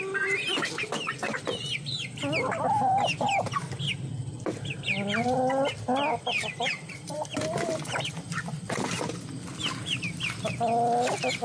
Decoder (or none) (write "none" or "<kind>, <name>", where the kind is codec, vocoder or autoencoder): none